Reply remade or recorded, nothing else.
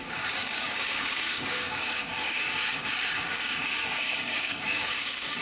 remade